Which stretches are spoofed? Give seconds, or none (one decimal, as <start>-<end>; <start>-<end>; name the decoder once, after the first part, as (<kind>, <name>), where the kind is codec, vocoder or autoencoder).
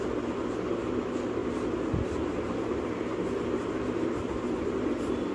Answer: none